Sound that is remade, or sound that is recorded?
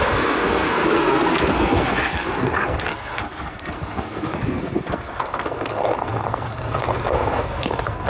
remade